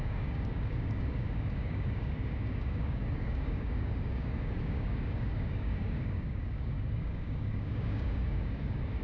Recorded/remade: remade